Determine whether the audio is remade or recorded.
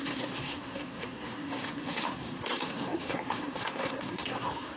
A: remade